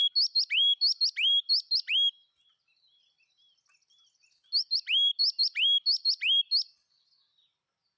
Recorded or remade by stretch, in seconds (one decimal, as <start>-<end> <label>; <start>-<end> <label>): 0.0-8.0 recorded